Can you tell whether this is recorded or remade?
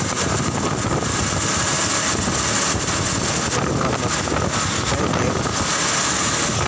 recorded